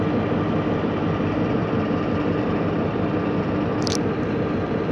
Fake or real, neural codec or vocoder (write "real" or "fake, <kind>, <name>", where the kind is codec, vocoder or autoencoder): fake, vocoder, BigVGAN v2